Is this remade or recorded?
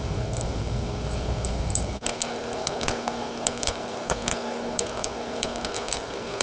remade